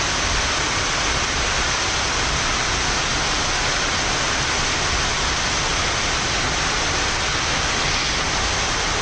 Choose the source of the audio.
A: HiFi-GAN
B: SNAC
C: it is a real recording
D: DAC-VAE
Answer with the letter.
C